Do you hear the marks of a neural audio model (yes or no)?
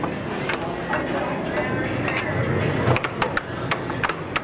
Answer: no